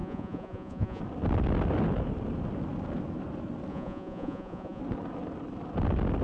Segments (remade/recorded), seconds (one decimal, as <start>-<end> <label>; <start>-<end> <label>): 0.0-1.0 remade; 1.0-3.7 recorded; 3.7-4.8 remade; 4.8-6.2 recorded